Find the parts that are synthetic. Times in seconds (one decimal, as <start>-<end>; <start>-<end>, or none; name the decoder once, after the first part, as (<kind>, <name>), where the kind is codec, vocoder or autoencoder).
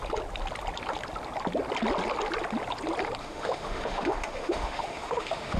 3.2-5.6 (autoencoder, DAC-VAE)